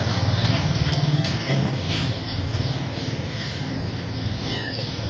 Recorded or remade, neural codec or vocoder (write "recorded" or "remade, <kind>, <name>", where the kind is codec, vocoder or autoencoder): remade, codec, DAC